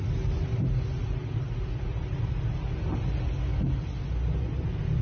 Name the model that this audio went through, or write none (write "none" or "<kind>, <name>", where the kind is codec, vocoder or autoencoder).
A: none